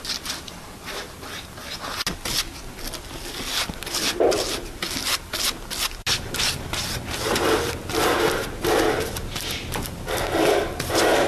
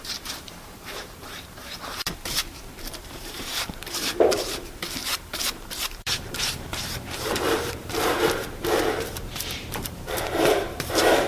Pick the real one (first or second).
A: first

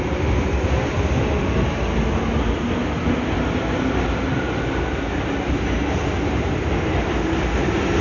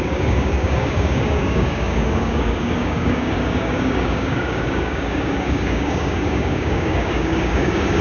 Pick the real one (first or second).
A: first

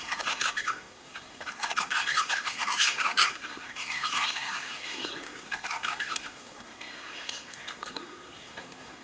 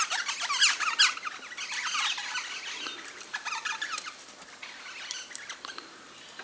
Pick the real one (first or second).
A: second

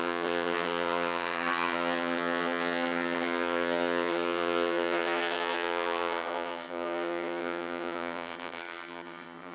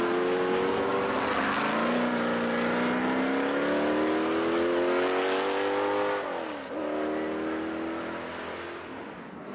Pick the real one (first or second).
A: second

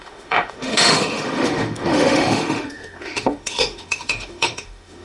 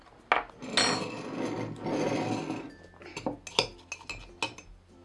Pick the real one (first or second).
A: second